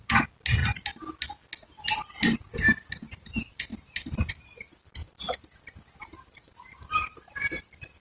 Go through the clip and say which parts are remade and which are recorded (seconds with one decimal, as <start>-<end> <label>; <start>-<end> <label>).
0.0-3.7 recorded; 3.7-4.4 remade; 4.4-5.0 recorded; 5.0-7.6 remade; 7.6-8.0 recorded